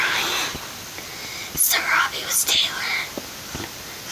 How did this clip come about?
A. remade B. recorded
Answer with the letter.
B